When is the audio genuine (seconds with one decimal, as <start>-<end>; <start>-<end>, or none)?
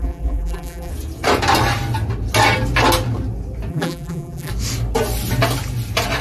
0.9-3.7; 4.5-6.2